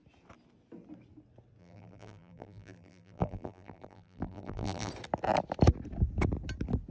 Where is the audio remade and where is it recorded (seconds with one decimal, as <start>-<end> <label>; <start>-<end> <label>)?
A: 0.0-1.6 recorded; 1.6-4.9 remade; 4.9-6.9 recorded